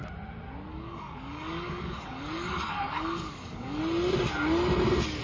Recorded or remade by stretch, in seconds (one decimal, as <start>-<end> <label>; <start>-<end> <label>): 0.0-0.7 recorded; 0.7-3.8 remade; 3.8-5.2 recorded